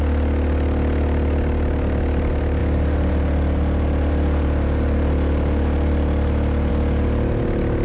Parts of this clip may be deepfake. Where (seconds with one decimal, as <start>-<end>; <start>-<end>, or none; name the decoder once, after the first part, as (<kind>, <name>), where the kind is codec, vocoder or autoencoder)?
none